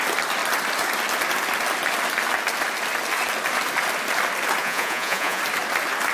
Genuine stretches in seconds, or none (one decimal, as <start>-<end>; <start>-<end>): 0.0-4.6; 5.4-6.1